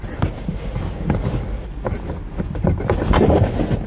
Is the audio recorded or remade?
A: recorded